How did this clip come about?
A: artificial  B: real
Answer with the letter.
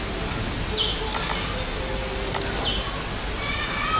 B